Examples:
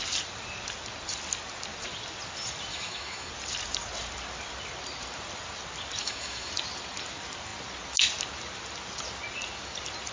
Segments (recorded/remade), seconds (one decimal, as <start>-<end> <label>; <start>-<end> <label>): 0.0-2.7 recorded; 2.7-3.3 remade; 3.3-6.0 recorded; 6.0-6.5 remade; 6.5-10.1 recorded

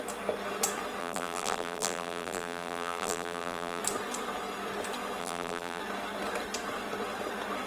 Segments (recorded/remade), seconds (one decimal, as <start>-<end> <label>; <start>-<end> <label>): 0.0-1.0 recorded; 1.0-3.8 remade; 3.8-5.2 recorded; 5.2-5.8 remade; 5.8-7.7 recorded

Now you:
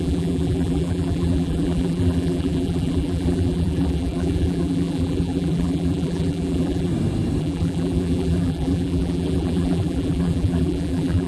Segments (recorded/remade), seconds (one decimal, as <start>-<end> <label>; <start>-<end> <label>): 0.0-6.9 remade; 6.9-7.4 recorded; 7.4-11.3 remade

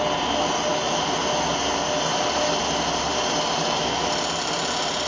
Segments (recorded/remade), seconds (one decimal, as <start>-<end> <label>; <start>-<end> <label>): 0.0-5.1 recorded

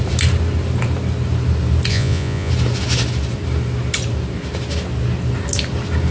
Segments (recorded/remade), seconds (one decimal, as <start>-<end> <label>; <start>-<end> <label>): 0.0-1.9 recorded; 1.9-2.5 remade; 2.5-6.1 recorded